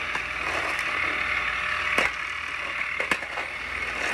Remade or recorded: recorded